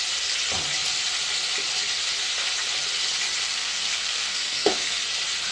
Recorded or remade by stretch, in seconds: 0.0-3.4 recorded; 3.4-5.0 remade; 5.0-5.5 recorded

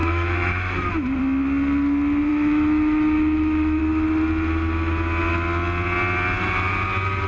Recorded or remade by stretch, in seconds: 0.0-1.2 remade; 1.2-2.3 recorded; 2.3-3.8 remade; 3.8-7.3 recorded

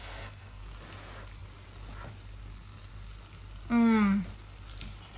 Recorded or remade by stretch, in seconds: 0.0-0.6 remade; 0.6-5.2 recorded